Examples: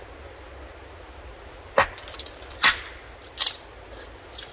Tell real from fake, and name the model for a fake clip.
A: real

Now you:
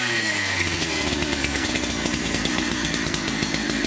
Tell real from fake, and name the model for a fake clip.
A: fake, codec, SNAC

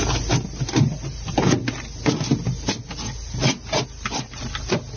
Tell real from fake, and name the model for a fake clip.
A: real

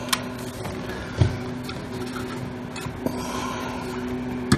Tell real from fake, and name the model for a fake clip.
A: real